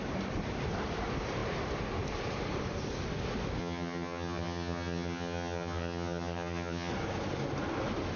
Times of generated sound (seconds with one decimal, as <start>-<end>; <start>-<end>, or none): 3.6-6.9